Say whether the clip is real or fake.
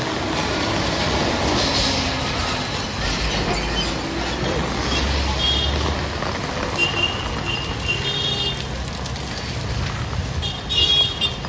real